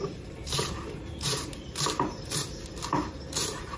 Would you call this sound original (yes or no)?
no